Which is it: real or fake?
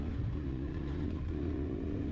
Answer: fake